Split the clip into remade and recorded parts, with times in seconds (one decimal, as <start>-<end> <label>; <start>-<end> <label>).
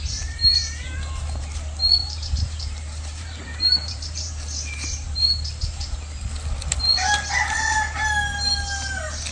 0.0-2.0 recorded; 2.0-4.3 remade; 4.3-9.3 recorded